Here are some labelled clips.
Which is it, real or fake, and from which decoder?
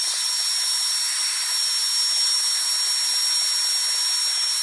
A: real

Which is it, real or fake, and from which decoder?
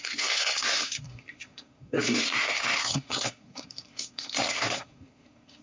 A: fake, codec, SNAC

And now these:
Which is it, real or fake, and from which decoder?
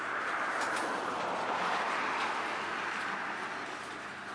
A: real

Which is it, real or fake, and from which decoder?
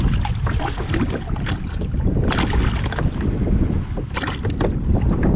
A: real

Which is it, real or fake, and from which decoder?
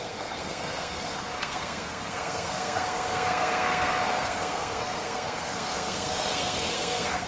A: fake, codec, SNAC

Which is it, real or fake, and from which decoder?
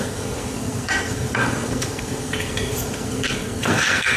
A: fake, codec, SNAC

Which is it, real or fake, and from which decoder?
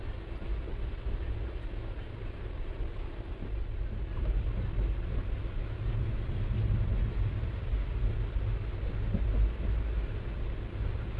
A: real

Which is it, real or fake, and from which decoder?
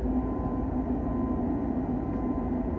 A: real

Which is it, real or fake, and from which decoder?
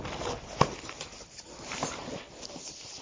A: real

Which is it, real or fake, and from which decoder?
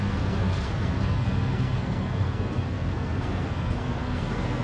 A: fake, codec, SNAC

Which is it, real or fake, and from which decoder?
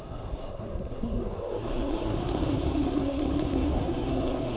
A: fake, codec, SNAC